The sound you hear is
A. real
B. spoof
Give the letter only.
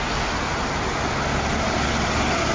A